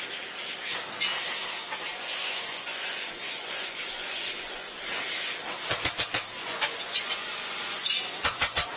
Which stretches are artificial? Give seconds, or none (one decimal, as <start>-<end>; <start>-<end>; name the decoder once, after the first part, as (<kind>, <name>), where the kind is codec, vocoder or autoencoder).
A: 1.9-4.7 (vocoder, Vocos); 6.4-8.8